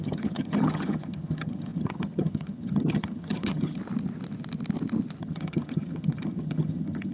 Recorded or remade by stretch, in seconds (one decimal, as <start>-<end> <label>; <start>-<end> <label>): 0.0-3.8 remade; 3.8-5.2 recorded; 5.2-7.1 remade